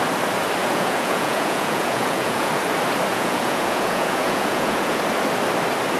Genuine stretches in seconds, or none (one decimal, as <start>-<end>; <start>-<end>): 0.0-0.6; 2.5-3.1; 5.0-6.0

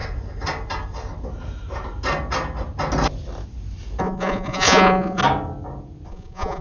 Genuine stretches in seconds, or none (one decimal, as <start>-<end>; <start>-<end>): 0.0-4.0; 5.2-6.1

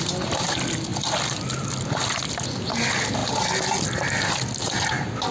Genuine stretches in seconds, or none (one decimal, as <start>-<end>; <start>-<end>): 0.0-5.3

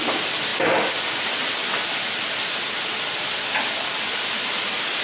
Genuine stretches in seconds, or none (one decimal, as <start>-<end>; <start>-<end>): 0.0-5.0